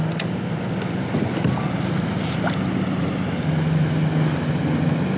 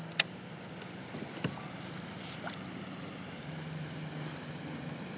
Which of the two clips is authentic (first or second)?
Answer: first